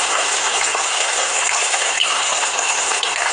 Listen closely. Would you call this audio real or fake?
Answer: fake